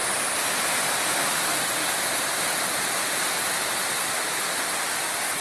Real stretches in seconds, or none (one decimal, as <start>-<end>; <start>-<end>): 0.0-5.4